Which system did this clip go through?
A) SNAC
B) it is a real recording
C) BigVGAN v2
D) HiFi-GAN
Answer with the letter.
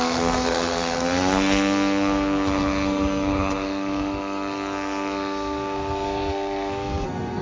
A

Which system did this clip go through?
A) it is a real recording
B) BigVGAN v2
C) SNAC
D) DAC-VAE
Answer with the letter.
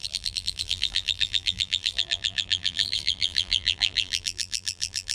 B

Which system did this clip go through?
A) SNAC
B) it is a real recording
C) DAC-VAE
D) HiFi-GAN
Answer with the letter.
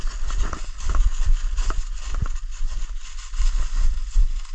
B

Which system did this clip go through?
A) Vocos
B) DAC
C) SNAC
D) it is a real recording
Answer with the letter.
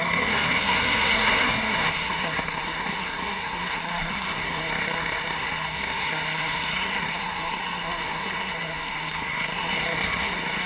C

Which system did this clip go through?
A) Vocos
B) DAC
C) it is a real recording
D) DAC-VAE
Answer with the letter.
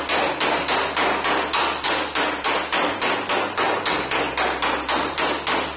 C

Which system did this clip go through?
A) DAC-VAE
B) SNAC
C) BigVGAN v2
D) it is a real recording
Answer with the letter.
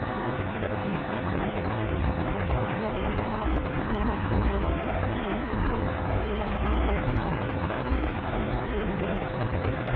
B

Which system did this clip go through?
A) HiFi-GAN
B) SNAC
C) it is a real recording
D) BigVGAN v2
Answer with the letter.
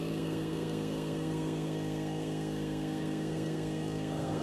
B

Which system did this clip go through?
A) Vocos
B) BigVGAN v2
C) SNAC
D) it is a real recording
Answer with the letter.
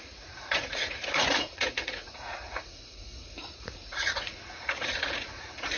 A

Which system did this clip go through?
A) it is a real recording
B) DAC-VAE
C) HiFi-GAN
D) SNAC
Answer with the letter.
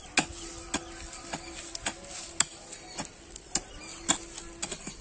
A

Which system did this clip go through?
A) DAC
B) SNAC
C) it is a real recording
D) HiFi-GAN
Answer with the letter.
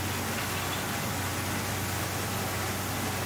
C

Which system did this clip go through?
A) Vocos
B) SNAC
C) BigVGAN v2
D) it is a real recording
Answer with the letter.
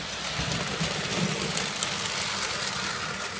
D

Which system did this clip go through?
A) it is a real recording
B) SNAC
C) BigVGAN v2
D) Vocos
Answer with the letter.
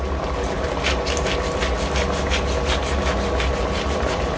A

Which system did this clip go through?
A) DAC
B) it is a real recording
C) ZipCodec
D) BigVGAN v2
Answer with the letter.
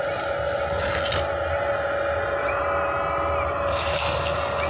B